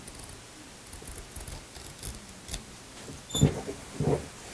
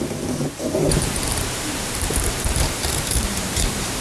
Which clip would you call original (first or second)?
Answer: first